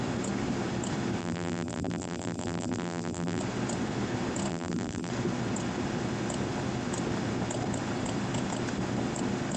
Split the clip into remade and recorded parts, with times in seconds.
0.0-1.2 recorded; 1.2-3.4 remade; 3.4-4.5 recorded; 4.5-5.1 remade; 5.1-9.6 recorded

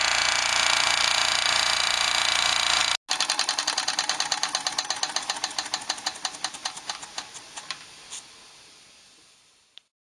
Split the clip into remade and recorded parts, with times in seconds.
0.0-10.0 recorded

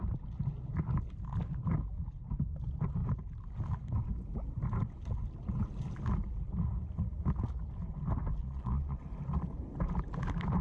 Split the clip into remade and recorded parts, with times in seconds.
0.0-8.4 recorded; 8.4-9.0 remade; 9.0-10.6 recorded

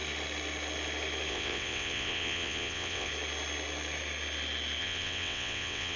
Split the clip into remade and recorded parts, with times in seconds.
0.0-1.3 recorded; 1.3-3.1 remade; 3.1-4.8 recorded; 4.8-6.0 remade

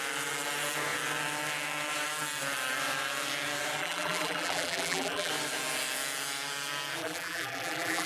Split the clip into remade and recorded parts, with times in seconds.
0.0-3.8 recorded; 3.8-5.3 remade; 5.3-7.0 recorded; 7.0-8.1 remade

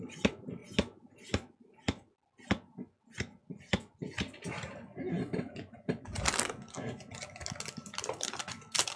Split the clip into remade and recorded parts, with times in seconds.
0.0-9.0 recorded

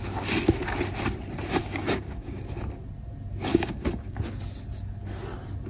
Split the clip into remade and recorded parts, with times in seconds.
0.0-1.6 recorded; 1.6-2.4 remade; 2.4-3.5 recorded; 3.5-4.2 remade; 4.2-5.7 recorded